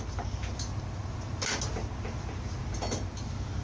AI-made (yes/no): no